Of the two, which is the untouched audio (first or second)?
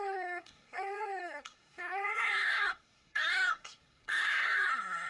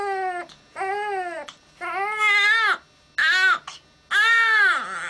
second